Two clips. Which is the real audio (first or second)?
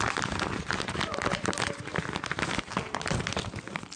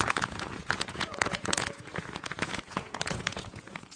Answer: first